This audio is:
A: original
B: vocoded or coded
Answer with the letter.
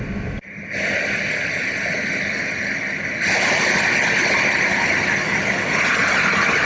A